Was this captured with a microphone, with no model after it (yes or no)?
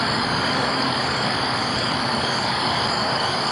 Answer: no